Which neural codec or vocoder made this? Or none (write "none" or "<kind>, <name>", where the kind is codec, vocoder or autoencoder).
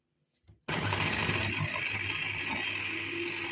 none